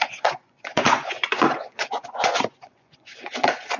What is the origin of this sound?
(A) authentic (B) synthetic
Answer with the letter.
B